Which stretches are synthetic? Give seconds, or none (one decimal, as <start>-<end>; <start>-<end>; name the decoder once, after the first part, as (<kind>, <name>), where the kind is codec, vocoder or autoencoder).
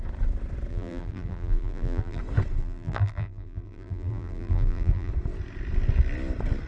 0.7-2.2 (vocoder, BigVGAN v2); 2.6-5.1